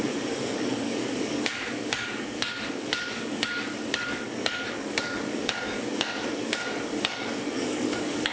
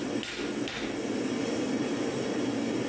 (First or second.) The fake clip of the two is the first